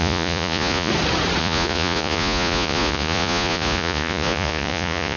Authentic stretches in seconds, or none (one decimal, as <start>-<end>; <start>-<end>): 0.9-1.4